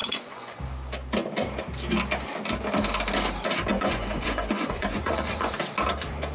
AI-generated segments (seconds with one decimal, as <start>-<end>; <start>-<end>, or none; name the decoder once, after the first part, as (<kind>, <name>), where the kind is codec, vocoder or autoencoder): 0.0-0.6 (vocoder, Vocos); 3.7-5.5